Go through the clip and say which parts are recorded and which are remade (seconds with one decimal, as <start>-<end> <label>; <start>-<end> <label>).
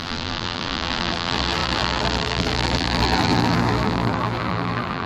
0.0-5.1 remade